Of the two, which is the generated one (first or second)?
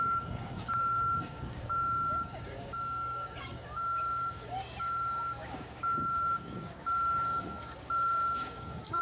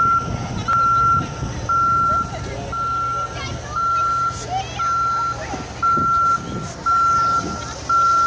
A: first